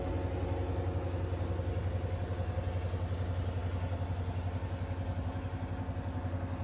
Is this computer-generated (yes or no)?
no